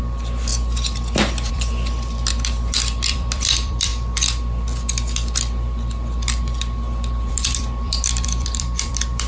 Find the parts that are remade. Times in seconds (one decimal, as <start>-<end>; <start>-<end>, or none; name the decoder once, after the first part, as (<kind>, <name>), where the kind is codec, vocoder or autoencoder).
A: 0.0-0.5 (vocoder, BigVGAN v2); 1.5-3.9; 7.3-9.3